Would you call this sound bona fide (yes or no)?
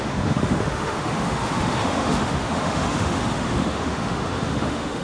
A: no